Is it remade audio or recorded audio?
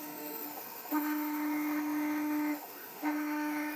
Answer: remade